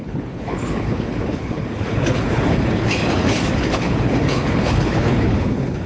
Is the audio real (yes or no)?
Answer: no